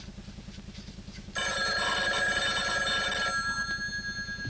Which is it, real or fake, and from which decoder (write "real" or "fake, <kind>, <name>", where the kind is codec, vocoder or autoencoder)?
real